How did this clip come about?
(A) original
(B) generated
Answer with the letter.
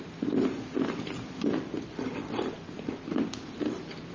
A